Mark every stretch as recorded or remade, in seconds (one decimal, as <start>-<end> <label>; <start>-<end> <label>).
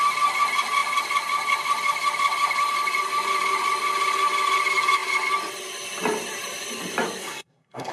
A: 0.0-7.2 recorded; 7.2-7.9 remade